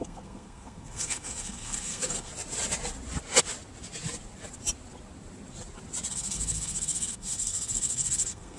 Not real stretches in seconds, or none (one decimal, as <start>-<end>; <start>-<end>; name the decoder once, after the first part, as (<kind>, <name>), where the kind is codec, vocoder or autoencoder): 0.0-2.3 (codec, SNAC); 6.1-8.6